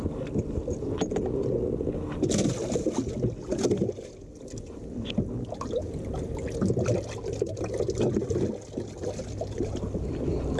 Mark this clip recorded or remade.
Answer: recorded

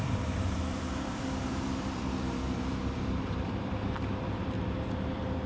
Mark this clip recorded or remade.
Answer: remade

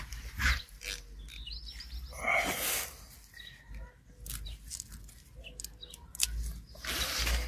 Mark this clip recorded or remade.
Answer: recorded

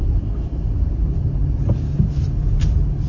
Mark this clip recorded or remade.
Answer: recorded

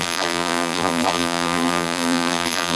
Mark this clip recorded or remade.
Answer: remade